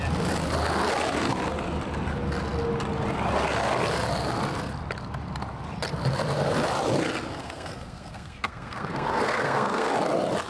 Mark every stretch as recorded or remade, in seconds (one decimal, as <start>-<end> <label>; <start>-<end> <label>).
0.0-7.4 recorded; 7.4-9.9 remade; 9.9-10.5 recorded